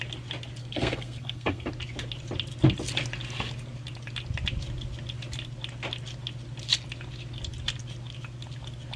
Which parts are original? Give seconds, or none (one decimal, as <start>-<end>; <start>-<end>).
0.0-0.6; 1.7-9.0